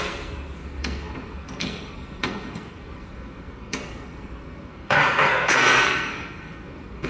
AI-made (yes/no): yes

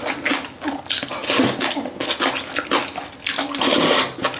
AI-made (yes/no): no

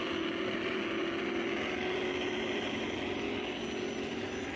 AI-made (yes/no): no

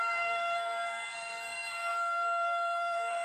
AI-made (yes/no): yes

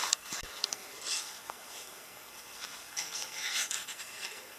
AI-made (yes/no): yes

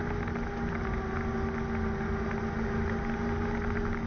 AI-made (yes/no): no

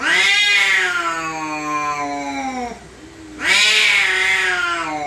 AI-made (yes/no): no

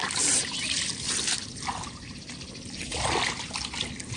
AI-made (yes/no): no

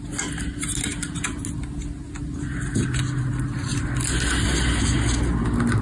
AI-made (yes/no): no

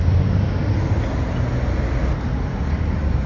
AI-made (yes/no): no